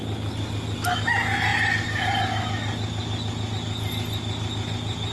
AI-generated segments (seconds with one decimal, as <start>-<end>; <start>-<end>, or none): none